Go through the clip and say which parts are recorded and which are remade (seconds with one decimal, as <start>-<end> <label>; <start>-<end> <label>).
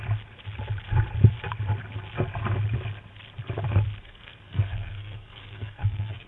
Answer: 0.0-4.0 recorded; 4.0-6.3 remade